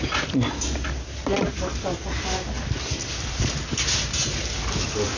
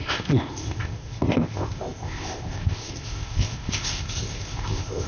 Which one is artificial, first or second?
second